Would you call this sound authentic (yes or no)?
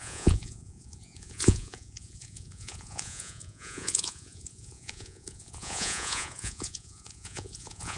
no